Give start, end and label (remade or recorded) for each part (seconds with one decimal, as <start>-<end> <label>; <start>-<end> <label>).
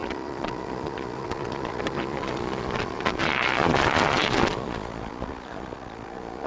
0.0-6.5 remade